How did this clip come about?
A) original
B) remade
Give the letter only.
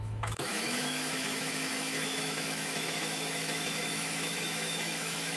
B